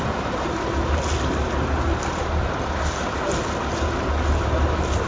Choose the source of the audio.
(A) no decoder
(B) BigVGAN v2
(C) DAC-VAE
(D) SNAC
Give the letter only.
A